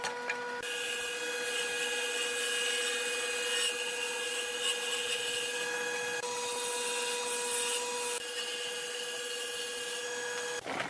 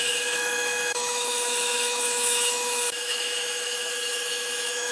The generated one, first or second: second